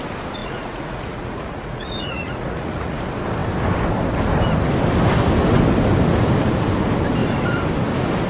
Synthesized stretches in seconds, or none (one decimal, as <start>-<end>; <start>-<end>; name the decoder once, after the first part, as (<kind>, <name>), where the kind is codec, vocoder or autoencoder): 0.4-3.0 (vocoder, Vocos)